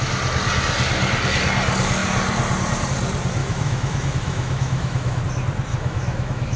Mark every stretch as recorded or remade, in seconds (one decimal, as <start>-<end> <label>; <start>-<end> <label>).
0.0-3.4 recorded; 3.4-5.2 remade; 5.2-5.7 recorded; 5.7-6.6 remade